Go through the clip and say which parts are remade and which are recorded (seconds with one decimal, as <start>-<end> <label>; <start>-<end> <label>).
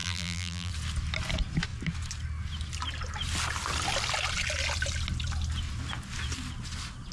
0.0-0.7 remade; 0.7-7.1 recorded